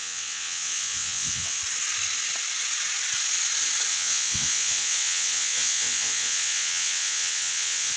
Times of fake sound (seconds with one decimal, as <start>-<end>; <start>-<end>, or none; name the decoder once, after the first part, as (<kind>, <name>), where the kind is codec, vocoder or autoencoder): 0.0-1.6 (vocoder, WaveNeXt); 3.9-8.0

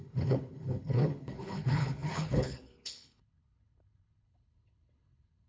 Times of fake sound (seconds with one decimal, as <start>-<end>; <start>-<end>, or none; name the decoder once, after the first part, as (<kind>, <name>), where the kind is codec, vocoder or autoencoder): 0.0-5.5 (codec, HILCodec)

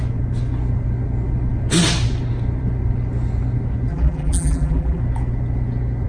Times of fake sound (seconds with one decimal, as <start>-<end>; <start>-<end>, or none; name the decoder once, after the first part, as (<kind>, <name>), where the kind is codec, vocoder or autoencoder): 3.9-5.0 (vocoder, BigVGAN v2)

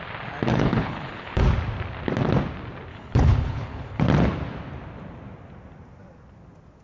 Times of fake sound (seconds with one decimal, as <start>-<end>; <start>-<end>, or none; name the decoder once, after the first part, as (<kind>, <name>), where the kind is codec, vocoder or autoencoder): 0.5-1.4 (codec, HILCodec); 2.9-4.0

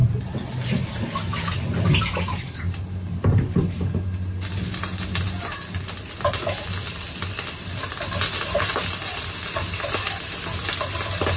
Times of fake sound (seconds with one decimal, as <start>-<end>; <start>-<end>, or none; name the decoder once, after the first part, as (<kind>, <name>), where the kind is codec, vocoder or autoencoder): none